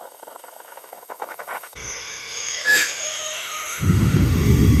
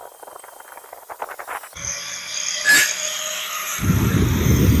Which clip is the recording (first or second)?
second